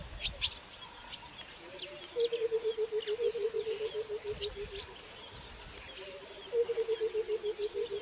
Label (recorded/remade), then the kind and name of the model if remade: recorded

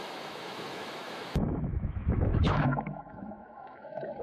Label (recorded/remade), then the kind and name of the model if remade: remade, autoencoder, DAC-VAE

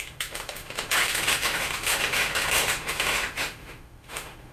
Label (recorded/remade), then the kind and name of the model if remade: remade, autoencoder, DAC-VAE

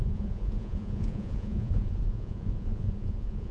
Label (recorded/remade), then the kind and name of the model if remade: remade, vocoder, Vocos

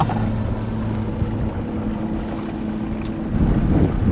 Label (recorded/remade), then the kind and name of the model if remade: recorded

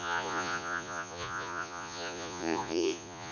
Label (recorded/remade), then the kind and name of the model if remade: remade, vocoder, Vocos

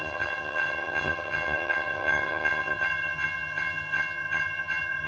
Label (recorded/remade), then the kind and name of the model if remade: remade, vocoder, HiFi-GAN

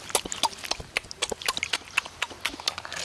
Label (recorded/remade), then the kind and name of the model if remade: recorded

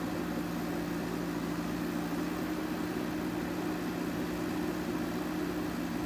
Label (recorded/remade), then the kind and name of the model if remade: recorded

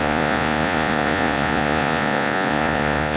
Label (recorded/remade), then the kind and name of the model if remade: remade, vocoder, Vocos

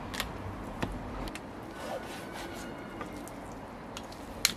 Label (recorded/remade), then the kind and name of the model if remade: recorded